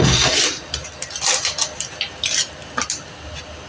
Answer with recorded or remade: recorded